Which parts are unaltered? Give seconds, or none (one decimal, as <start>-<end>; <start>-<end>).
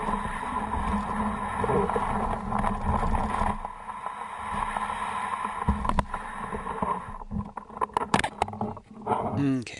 0.0-9.8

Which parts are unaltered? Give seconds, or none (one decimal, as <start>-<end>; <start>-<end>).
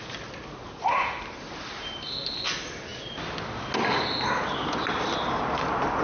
0.0-0.6; 1.2-6.0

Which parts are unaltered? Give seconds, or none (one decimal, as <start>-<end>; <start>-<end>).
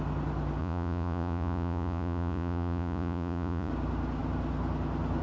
0.0-0.6; 3.7-5.2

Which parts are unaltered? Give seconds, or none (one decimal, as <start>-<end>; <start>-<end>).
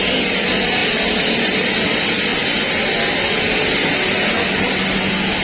0.0-5.4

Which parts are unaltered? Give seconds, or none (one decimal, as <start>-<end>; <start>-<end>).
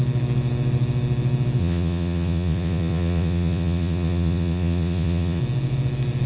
0.0-1.6; 5.4-6.3